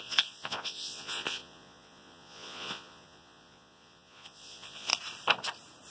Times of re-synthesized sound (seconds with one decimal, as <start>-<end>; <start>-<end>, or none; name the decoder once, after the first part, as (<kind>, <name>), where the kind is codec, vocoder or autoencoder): 0.0-4.9 (vocoder, Vocos)